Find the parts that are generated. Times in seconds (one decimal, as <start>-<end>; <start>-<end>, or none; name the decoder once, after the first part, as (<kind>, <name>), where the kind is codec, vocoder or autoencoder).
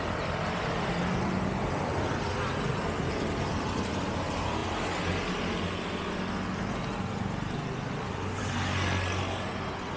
none